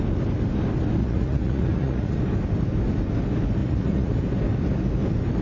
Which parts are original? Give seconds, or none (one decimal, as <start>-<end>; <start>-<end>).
0.0-1.0; 2.2-3.6; 4.1-5.4